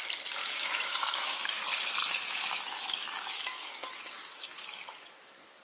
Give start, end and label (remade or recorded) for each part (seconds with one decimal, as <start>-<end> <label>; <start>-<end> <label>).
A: 0.0-0.4 recorded; 0.4-1.6 remade; 1.6-2.0 recorded; 2.0-5.6 remade